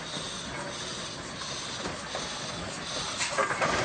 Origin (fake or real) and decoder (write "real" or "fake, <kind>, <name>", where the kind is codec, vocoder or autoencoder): real